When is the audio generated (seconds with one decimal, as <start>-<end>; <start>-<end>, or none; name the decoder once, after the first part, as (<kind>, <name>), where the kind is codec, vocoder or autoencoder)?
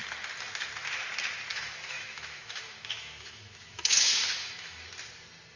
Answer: 1.5-4.9 (autoencoder, DAC-VAE)